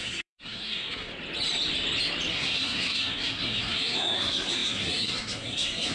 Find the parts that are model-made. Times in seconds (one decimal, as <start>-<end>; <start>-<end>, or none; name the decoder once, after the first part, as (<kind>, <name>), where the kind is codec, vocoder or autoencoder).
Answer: 0.0-1.1 (codec, SNAC); 2.3-5.9